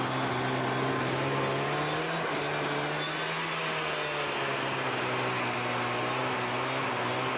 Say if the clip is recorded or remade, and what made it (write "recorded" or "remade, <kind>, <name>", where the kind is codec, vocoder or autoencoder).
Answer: recorded